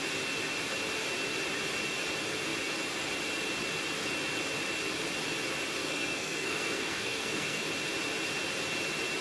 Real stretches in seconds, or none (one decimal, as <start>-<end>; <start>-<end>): 0.0-5.8; 7.6-9.2